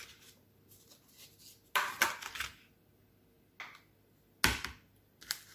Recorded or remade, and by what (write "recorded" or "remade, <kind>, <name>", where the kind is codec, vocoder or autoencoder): recorded